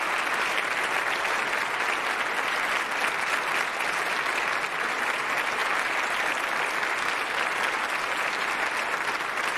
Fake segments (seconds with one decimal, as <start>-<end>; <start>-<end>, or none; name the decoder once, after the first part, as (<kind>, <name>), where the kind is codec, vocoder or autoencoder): none

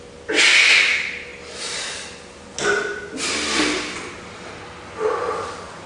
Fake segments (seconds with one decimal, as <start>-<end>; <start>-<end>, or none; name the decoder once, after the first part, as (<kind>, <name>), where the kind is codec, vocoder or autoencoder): none